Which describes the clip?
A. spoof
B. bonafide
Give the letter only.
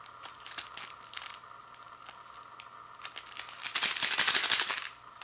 B